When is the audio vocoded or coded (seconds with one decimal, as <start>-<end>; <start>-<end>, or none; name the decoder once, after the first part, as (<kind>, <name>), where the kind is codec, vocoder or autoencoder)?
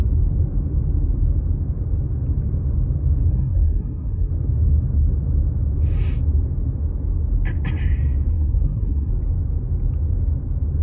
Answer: 3.3-4.3 (codec, SNAC); 8.3-9.1